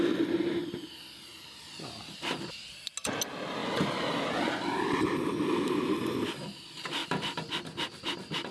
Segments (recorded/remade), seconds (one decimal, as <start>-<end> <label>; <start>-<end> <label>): 0.0-8.5 recorded